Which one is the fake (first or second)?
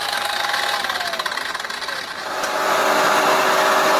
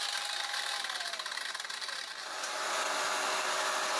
second